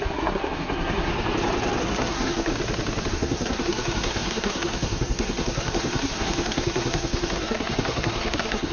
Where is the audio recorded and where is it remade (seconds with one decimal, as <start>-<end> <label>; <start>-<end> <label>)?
0.0-1.1 remade; 1.1-1.8 recorded; 1.8-2.5 remade; 2.5-3.1 recorded; 3.1-8.7 remade